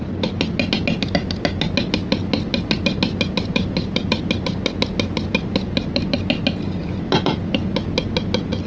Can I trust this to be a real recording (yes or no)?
yes